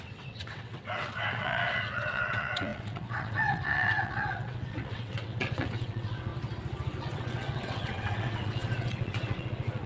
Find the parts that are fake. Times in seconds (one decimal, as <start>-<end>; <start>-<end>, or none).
0.0-6.3; 7.0-9.9

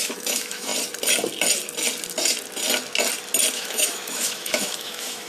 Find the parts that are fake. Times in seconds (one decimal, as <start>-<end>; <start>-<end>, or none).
0.0-0.7; 3.5-5.3

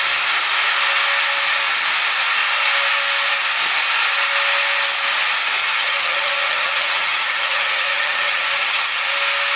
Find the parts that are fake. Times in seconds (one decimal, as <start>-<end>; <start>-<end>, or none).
5.6-9.1

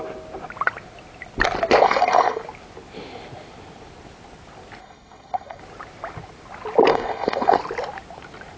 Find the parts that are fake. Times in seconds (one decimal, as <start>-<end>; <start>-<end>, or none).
1.8-2.4; 4.8-5.6; 6.9-7.6

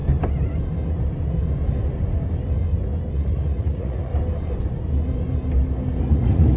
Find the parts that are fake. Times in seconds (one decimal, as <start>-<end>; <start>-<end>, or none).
3.1-4.1; 6.0-6.6

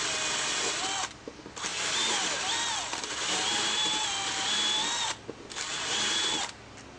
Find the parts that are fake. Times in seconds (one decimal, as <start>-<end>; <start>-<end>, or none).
none

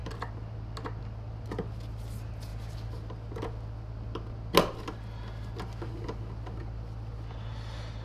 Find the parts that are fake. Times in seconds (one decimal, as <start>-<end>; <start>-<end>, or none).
none

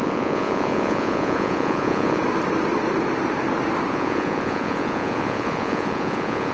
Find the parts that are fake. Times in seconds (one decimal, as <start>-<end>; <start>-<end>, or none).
0.0-2.2; 3.9-6.5